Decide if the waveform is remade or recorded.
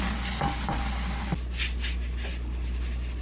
recorded